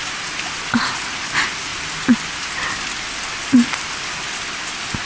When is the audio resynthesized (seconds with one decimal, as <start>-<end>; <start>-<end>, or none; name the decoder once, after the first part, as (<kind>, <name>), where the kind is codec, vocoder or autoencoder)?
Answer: none